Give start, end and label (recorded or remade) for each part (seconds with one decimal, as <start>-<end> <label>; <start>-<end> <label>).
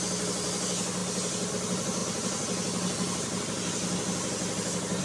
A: 0.0-5.0 recorded